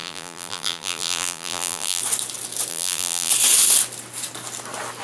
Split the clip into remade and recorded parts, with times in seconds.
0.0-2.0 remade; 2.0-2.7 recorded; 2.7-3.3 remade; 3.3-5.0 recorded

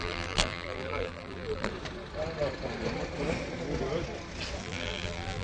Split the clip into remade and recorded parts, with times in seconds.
0.0-1.7 remade; 1.7-4.6 recorded; 4.6-5.4 remade